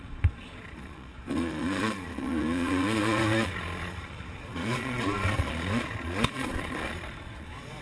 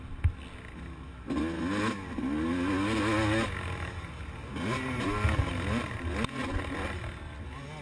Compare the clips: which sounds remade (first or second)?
first